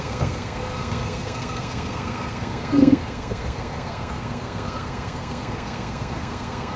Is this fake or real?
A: fake